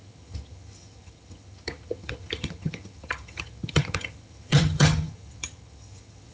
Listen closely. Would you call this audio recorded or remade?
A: remade